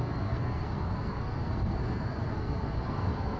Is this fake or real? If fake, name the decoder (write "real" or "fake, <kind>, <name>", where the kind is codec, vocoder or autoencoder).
fake, codec, SNAC